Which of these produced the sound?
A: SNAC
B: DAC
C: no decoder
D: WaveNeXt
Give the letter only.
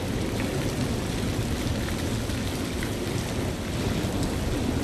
C